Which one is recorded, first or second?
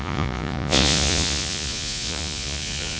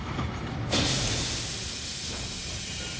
second